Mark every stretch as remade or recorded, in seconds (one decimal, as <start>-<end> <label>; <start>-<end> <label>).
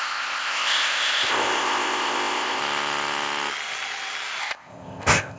0.0-2.6 remade; 2.6-4.4 recorded; 4.4-5.4 remade